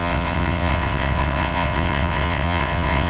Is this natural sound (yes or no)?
no